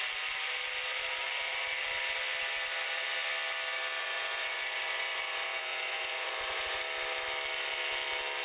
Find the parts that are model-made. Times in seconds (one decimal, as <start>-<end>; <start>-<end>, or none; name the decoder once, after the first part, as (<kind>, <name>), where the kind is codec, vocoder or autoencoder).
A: 4.0-6.8 (vocoder, Vocos)